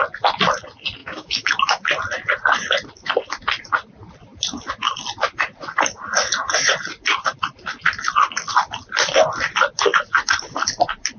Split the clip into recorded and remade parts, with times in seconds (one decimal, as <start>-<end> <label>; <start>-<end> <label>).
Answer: 0.0-1.0 recorded; 1.0-1.6 remade; 1.6-11.2 recorded